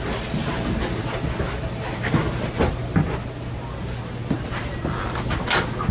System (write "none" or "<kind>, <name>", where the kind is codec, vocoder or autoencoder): none